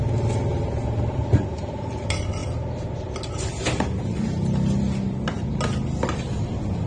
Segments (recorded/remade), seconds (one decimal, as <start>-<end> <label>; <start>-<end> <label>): 0.0-6.9 recorded